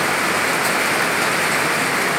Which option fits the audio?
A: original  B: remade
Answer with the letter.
A